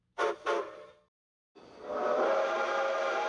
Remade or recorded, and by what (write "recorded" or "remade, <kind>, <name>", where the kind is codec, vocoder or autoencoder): recorded